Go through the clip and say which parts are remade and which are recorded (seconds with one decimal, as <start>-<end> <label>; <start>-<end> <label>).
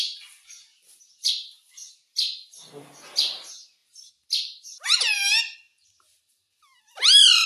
0.0-7.5 remade